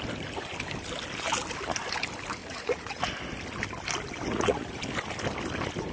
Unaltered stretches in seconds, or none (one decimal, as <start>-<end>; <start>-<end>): 0.0-2.4; 3.1-4.3; 4.8-5.9